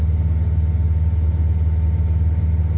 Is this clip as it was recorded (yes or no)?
yes